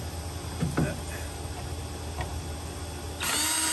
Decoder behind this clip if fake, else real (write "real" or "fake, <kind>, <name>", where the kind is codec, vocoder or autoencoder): real